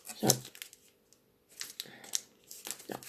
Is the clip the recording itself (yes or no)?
yes